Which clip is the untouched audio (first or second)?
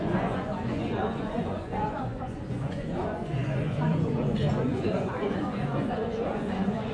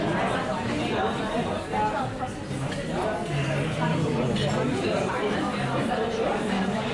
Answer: second